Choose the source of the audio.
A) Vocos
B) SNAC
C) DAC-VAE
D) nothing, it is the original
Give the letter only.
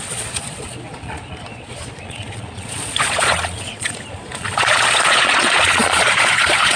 A